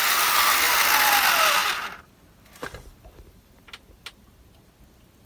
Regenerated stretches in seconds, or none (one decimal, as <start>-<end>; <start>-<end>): 1.6-4.8